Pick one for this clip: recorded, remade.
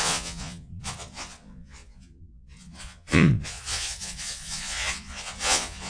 remade